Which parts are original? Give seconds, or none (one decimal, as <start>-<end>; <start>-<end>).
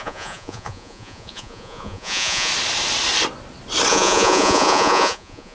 2.5-3.9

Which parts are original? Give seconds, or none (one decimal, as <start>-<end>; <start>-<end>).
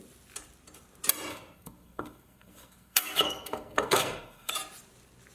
0.0-1.3; 4.5-5.3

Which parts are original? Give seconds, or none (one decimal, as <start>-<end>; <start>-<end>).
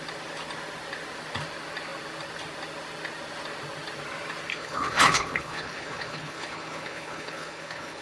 0.0-4.5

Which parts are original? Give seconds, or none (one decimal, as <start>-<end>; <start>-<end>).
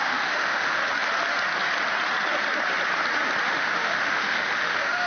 0.8-3.5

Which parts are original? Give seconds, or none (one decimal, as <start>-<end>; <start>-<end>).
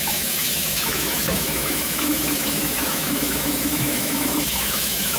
none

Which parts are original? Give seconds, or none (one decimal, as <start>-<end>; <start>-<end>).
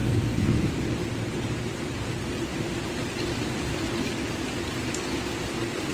0.7-5.9